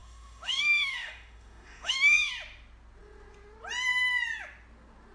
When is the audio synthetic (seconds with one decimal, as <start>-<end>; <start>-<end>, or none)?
0.0-2.3